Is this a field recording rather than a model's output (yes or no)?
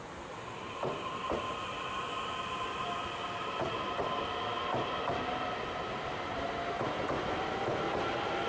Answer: yes